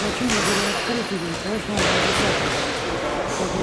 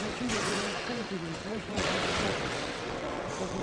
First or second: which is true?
first